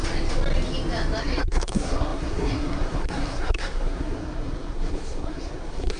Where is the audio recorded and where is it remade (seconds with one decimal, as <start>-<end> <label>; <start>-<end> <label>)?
0.0-1.2 recorded; 1.2-6.0 remade